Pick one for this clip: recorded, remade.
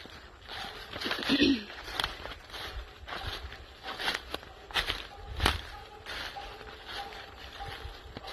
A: recorded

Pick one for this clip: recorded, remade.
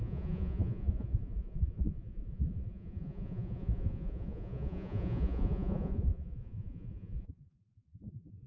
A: remade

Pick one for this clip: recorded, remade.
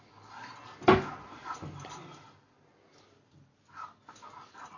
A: recorded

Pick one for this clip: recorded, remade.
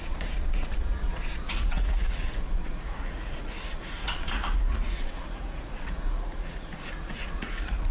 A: remade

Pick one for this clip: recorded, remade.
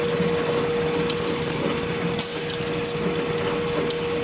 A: recorded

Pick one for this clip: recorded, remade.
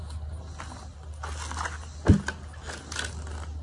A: recorded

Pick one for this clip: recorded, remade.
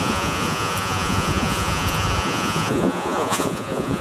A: remade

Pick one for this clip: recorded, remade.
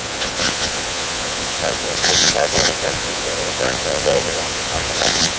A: remade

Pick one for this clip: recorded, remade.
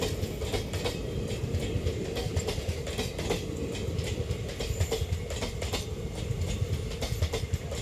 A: recorded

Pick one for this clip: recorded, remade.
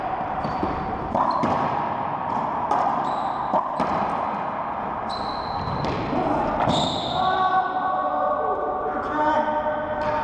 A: recorded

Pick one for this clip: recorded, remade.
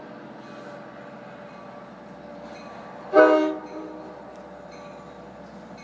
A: recorded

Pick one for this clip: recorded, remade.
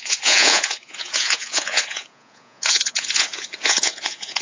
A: remade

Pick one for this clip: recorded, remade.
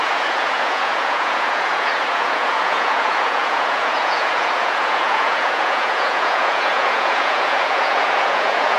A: remade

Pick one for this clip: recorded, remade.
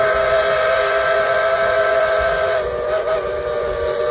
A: remade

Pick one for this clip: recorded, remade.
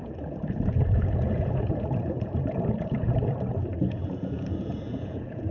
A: remade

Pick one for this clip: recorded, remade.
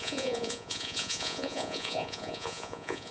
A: remade